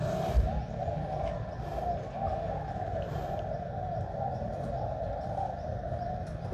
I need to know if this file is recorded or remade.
recorded